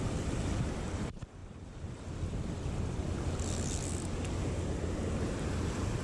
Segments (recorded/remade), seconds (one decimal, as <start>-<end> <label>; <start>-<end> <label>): 0.0-6.0 recorded